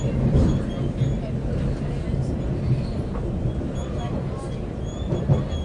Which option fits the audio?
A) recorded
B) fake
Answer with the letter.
A